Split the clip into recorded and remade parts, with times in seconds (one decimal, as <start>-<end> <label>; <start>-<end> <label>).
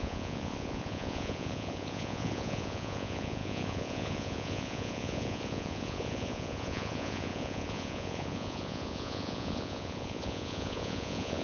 0.0-11.4 remade